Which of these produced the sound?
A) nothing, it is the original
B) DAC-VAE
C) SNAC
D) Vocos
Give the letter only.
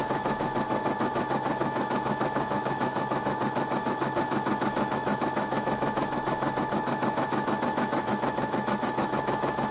B